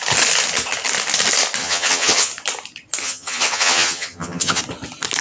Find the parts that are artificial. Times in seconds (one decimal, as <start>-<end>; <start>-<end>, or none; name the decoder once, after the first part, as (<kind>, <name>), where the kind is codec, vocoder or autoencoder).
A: 1.6-2.3 (vocoder, HiFi-GAN); 3.0-4.6